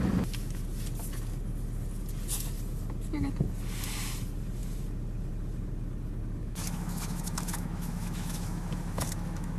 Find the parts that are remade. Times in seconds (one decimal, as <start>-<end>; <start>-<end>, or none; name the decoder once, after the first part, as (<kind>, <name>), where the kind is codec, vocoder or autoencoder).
6.4-9.6 (autoencoder, DAC-VAE)

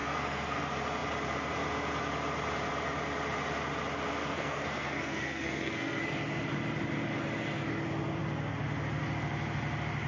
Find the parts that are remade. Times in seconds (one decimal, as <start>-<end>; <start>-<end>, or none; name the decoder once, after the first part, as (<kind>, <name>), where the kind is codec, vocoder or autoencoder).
0.0-0.6 (codec, SNAC); 4.2-6.0

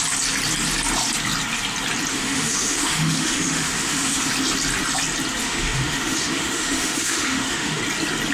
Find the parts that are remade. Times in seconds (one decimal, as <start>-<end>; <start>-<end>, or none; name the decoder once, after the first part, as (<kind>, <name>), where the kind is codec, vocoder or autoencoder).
2.1-4.3 (autoencoder, DAC-VAE); 5.4-7.8

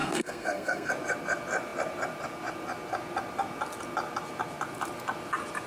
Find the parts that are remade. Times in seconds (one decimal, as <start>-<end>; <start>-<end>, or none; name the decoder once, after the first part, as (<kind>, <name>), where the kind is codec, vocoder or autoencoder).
0.0-0.9 (codec, SNAC)

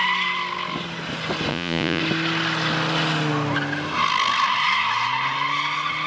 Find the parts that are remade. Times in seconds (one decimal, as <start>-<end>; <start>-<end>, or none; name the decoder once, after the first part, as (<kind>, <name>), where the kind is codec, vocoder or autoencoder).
1.5-2.0 (vocoder, Vocos)

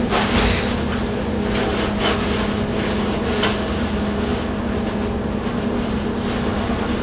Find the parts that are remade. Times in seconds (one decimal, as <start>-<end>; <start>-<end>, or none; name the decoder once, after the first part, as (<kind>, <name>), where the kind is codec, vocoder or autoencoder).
none

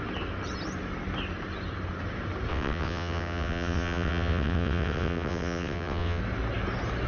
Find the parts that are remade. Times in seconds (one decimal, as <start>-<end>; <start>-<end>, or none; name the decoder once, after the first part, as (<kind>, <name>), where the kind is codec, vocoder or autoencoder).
2.5-6.2 (vocoder, WaveNeXt)